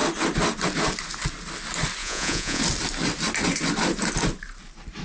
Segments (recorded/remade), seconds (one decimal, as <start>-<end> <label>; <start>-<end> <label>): 0.0-2.0 recorded; 2.0-2.6 remade; 2.6-5.0 recorded